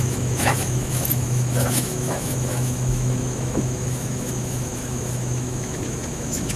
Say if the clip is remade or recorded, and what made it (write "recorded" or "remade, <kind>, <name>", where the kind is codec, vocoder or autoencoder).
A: remade, autoencoder, DAC-VAE